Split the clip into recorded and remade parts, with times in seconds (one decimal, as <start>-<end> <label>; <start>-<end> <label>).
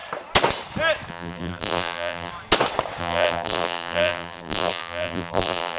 0.0-1.1 recorded; 1.1-2.3 remade; 2.3-3.0 recorded; 3.0-5.8 remade